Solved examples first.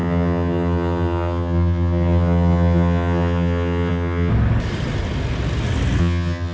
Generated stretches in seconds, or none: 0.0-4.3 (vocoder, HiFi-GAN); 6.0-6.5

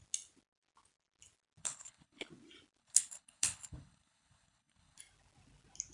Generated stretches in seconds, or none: 1.6-2.3 (codec, HILCodec); 2.8-5.0